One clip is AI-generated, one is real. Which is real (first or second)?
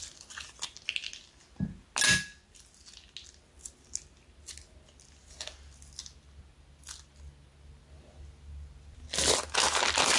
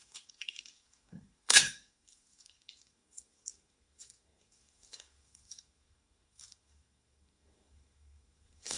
first